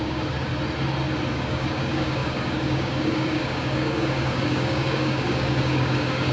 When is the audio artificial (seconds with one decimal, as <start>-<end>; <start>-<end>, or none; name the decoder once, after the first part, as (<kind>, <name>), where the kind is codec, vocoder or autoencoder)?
0.0-0.5 (codec, DAC); 1.3-6.3